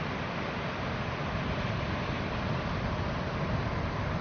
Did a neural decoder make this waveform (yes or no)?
no